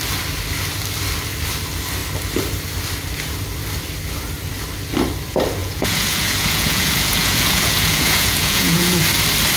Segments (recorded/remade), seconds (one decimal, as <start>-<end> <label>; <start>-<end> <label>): 0.0-5.6 recorded; 5.6-9.0 remade; 9.0-9.6 recorded